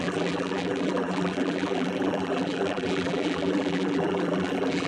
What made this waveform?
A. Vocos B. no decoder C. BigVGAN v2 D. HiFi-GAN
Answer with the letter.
C